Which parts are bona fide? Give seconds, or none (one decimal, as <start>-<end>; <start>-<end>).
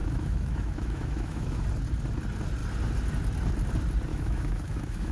1.6-4.1